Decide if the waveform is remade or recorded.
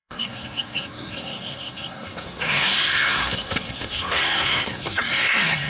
remade